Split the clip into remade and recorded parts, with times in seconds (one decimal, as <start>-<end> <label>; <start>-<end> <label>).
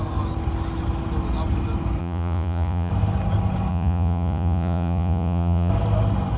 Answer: 0.0-2.0 recorded; 2.0-2.9 remade; 2.9-3.7 recorded; 3.7-5.7 remade; 5.7-6.4 recorded